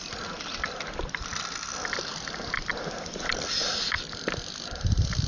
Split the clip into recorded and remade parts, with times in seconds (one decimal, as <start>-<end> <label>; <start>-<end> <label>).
0.0-5.3 recorded